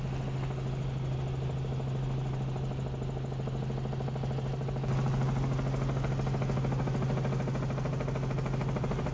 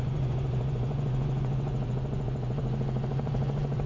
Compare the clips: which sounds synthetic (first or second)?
second